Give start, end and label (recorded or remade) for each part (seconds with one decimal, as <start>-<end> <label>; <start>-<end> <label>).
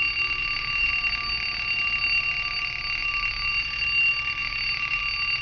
0.0-0.4 recorded; 0.4-0.9 remade; 0.9-3.0 recorded; 3.0-3.5 remade; 3.5-4.4 recorded; 4.4-5.0 remade; 5.0-5.4 recorded